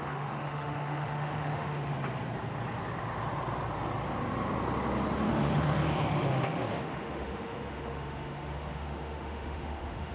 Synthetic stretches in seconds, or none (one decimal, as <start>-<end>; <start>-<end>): 0.0-1.9; 5.2-10.1